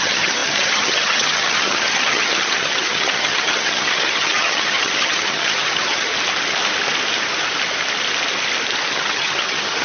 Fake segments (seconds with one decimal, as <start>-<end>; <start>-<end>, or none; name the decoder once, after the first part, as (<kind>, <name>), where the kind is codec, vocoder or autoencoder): 0.0-6.1 (vocoder, HiFi-GAN); 8.9-9.8